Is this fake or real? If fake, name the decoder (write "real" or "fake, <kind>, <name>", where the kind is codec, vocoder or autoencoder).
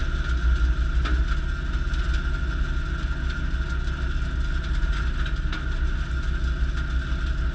real